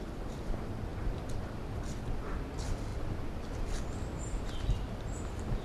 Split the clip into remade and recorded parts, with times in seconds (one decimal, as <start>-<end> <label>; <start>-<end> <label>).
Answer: 0.0-5.6 recorded